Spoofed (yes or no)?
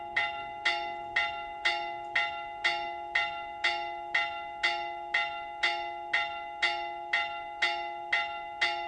no